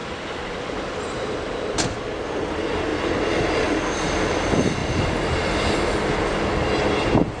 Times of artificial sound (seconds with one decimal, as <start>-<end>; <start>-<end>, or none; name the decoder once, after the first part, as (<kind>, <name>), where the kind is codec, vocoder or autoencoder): none